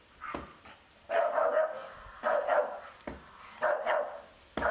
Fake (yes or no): no